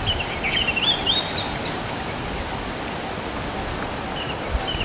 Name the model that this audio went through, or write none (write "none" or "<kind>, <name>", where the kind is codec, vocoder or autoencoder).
none